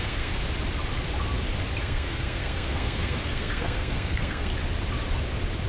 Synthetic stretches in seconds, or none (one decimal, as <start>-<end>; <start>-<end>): 0.0-0.4; 1.8-4.5